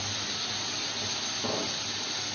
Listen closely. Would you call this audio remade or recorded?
recorded